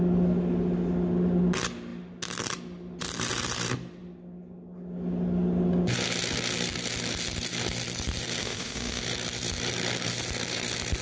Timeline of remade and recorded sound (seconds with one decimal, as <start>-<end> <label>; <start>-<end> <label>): 0.0-8.4 recorded; 8.4-9.0 remade; 9.0-11.0 recorded